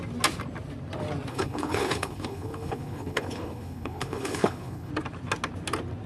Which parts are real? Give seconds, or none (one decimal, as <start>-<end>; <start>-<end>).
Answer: 0.0-1.3; 4.9-6.1

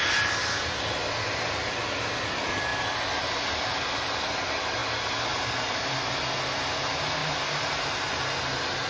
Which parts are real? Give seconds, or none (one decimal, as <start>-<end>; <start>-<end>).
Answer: 0.0-7.2; 8.1-8.9

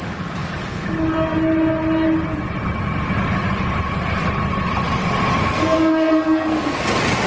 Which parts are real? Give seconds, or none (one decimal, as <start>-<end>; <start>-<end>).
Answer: 0.0-5.4; 6.8-7.3

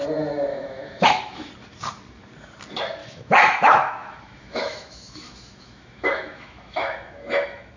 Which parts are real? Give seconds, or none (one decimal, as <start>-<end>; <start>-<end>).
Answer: 0.0-0.5; 1.5-3.0

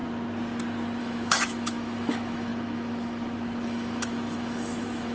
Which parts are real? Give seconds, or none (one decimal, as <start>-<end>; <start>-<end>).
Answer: 0.0-1.0

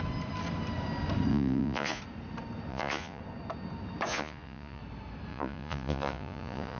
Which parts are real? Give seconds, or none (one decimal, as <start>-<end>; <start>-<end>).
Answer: 0.0-1.3; 2.0-2.7; 3.2-4.1; 4.8-5.3

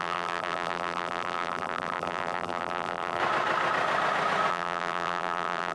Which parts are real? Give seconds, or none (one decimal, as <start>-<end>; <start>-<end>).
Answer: 3.2-4.5

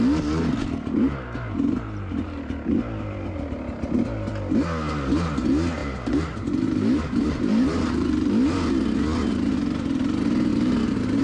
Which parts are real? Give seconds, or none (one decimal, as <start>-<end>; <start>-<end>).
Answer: 0.0-5.8; 8.3-10.5